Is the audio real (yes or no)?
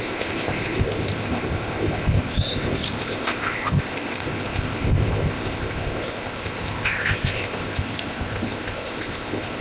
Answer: no